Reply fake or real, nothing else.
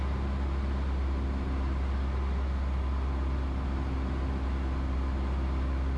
real